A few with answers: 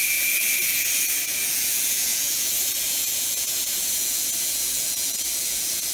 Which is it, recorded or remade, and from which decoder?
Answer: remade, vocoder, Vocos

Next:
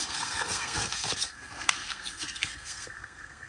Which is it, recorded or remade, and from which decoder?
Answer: remade, codec, SNAC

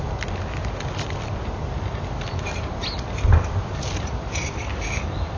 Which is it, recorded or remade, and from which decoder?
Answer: recorded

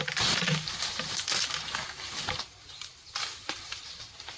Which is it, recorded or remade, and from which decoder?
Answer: recorded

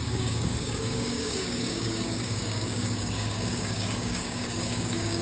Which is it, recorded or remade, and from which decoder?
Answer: remade, codec, DAC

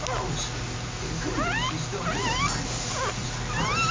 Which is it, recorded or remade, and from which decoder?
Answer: recorded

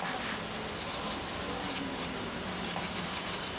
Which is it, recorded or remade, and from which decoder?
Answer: recorded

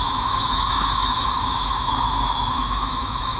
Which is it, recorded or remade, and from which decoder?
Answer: remade, autoencoder, DAC-VAE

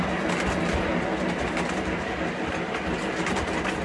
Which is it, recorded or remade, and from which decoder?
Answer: recorded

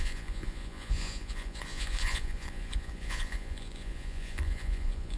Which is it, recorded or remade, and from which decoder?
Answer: remade, vocoder, Vocos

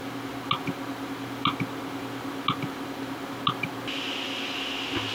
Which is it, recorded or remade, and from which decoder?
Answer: recorded